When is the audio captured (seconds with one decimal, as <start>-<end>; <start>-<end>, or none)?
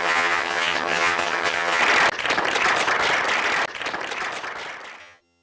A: 1.8-5.0